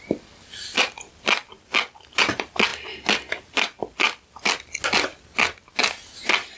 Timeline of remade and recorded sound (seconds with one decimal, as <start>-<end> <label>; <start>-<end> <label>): 0.0-6.6 recorded

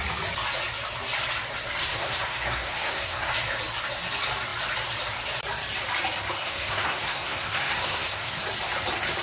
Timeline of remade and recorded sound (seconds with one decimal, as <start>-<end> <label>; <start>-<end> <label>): 0.0-1.8 recorded; 1.8-3.3 remade; 3.3-6.4 recorded; 6.4-8.4 remade; 8.4-9.2 recorded

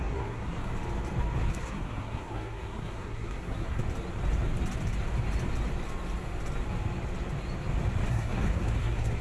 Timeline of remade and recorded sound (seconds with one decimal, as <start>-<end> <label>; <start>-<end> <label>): 0.0-0.7 remade; 0.7-1.5 recorded; 1.5-3.8 remade; 3.8-8.1 recorded; 8.1-9.2 remade